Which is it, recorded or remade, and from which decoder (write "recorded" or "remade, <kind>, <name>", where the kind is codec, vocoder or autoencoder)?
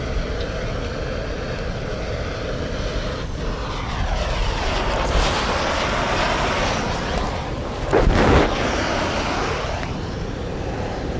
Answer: recorded